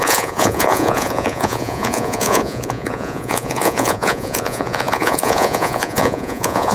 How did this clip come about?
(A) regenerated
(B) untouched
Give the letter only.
A